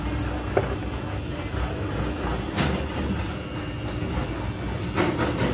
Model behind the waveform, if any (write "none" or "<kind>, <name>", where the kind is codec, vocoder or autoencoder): none